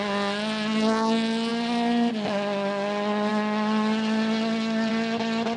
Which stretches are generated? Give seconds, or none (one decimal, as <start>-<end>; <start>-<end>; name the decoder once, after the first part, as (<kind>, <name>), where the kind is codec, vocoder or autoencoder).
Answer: 1.5-2.1 (vocoder, BigVGAN v2)